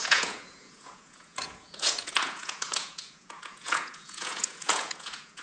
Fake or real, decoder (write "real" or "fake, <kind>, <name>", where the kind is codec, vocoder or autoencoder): fake, vocoder, Vocos